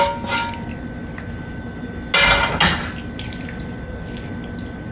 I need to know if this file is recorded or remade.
recorded